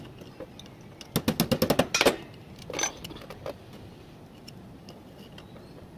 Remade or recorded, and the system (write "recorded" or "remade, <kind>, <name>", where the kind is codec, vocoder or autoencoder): recorded